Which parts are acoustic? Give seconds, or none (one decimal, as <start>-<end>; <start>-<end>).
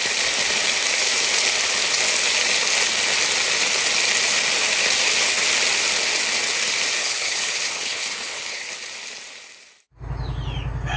0.0-7.0; 8.7-11.0